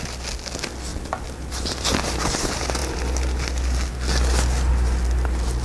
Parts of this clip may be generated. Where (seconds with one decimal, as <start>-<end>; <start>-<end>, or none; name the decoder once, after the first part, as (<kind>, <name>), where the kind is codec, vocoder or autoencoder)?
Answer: 0.9-2.2 (vocoder, BigVGAN v2)